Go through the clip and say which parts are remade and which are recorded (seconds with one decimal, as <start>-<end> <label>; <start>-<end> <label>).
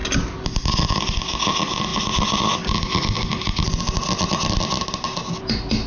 0.0-5.9 recorded